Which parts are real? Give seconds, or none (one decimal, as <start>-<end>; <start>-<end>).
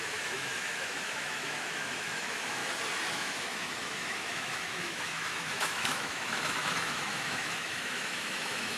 2.6-3.1